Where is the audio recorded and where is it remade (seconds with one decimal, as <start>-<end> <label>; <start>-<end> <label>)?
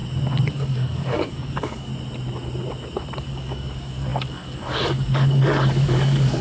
0.0-0.5 recorded; 0.5-1.9 remade; 1.9-3.2 recorded; 3.2-6.4 remade